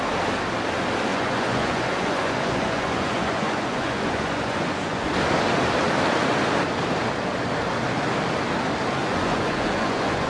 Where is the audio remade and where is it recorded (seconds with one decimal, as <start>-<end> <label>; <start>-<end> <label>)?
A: 0.0-1.1 recorded; 1.1-5.1 remade; 5.1-9.0 recorded; 9.0-10.3 remade